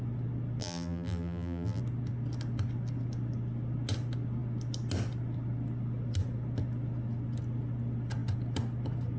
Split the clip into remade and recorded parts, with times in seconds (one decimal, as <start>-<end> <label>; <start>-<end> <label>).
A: 0.0-0.6 recorded; 0.6-1.8 remade; 1.8-9.2 recorded